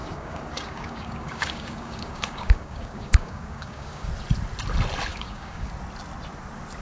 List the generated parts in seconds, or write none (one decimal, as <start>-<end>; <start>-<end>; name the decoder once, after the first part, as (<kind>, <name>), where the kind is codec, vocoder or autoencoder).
0.0-4.1 (codec, DAC); 5.1-5.7